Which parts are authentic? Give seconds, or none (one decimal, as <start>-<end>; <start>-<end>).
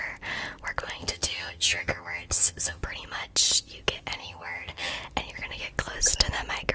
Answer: 0.0-1.0; 2.8-4.2; 4.9-6.7